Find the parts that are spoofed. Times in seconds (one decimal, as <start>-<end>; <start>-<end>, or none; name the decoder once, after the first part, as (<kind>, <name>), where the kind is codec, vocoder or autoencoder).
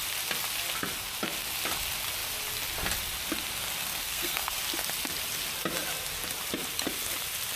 3.8-4.6 (codec, SNAC)